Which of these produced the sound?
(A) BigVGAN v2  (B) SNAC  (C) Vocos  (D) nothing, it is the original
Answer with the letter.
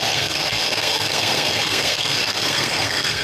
B